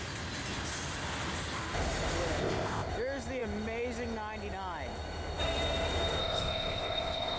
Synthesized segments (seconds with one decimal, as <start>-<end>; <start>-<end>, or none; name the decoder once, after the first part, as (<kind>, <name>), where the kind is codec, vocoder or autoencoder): 2.4-2.9 (codec, ZipCodec); 6.2-7.4